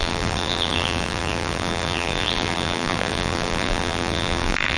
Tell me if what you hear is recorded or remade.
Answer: remade